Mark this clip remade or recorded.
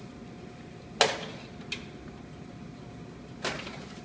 recorded